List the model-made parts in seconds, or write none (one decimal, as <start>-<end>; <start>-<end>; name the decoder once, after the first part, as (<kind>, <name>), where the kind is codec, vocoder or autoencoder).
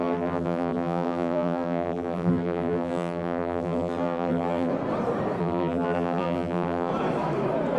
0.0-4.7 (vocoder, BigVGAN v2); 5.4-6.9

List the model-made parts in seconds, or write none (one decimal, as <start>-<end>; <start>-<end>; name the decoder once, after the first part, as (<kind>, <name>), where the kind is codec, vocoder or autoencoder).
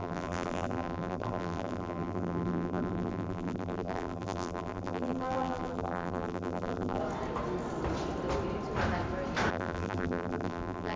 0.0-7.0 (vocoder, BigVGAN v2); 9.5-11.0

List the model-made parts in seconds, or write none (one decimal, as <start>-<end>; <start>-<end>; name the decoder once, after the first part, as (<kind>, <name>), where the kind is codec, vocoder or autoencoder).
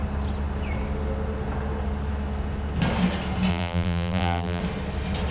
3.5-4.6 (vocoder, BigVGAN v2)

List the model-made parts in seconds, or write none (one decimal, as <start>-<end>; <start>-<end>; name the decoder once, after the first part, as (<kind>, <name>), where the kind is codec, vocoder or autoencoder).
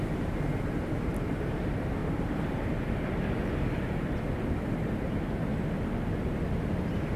0.0-2.0 (vocoder, BigVGAN v2); 2.5-5.5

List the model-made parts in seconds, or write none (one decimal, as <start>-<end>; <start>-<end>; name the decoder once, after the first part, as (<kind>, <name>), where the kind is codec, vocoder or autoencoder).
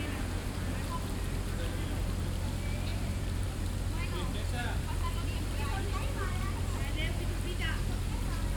2.9-3.6 (vocoder, BigVGAN v2); 4.6-6.2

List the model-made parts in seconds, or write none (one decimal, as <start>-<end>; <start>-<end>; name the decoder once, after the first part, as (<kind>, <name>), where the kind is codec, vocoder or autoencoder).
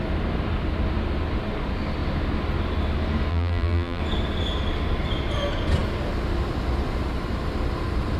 3.3-4.0 (vocoder, BigVGAN v2)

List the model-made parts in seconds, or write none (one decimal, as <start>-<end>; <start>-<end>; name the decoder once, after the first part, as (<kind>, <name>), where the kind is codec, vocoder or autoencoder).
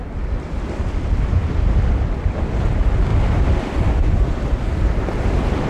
none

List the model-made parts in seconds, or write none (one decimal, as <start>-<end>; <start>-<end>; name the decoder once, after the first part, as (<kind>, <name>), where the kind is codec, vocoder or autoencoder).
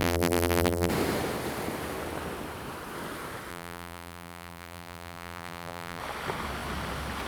0.0-0.9 (vocoder, BigVGAN v2); 3.5-6.0